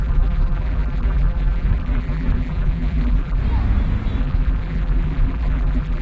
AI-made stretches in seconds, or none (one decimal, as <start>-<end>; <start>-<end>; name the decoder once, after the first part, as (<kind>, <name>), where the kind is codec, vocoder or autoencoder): 0.0-3.4 (vocoder, BigVGAN v2); 4.2-6.0